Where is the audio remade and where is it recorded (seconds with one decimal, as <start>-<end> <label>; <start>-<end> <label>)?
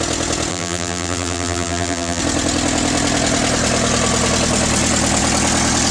0.0-0.5 recorded; 0.5-2.2 remade; 2.2-5.9 recorded